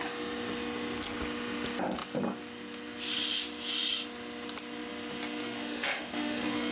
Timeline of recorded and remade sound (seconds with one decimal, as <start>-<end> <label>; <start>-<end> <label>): 0.0-5.4 recorded; 5.4-6.7 remade